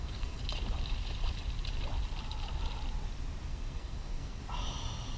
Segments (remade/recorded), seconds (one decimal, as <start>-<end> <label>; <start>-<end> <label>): 0.0-0.4 remade; 0.4-3.5 recorded; 3.5-4.4 remade; 4.4-5.2 recorded